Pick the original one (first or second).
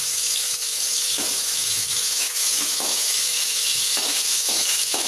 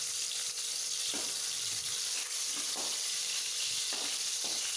second